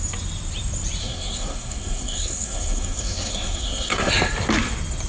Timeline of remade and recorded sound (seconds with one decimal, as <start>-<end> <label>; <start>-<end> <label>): 0.0-1.0 recorded; 1.0-4.1 remade; 4.1-5.1 recorded